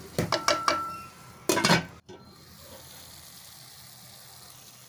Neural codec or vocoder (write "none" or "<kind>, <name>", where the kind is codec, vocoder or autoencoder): none